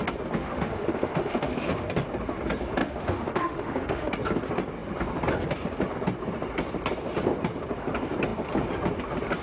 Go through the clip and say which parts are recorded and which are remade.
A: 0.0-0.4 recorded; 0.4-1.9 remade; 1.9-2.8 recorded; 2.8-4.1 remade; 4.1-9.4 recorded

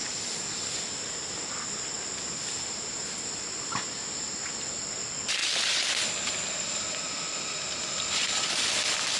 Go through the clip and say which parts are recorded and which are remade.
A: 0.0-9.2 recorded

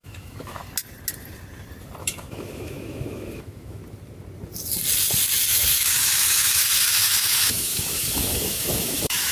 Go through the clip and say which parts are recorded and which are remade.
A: 0.0-0.6 remade; 0.6-2.0 recorded; 2.0-3.8 remade; 3.8-5.5 recorded; 5.5-9.3 remade

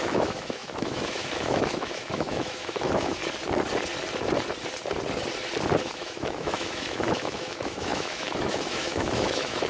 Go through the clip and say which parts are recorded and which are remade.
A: 0.0-3.2 remade; 3.2-5.8 recorded; 5.8-9.7 remade

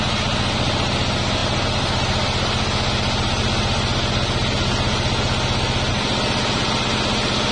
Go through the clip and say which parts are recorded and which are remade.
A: 0.0-7.5 recorded

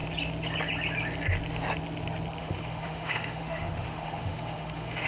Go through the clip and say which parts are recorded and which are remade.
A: 0.0-2.4 recorded; 2.4-5.1 remade

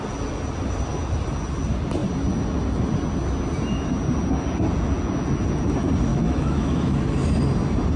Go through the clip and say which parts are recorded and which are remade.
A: 0.0-6.1 recorded; 6.1-7.0 remade; 7.0-8.0 recorded